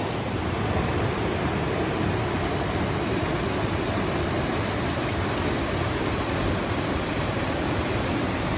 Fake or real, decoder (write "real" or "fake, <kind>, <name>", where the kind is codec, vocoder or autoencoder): real